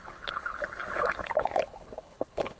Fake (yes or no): yes